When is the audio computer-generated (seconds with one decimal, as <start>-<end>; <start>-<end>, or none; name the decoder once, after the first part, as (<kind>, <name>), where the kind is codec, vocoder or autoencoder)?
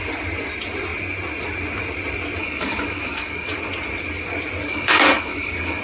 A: 2.4-3.5 (codec, DAC); 4.6-5.8